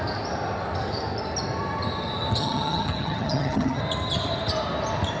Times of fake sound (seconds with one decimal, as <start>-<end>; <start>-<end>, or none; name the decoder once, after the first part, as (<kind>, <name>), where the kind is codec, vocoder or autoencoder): 2.4-3.8 (vocoder, HiFi-GAN)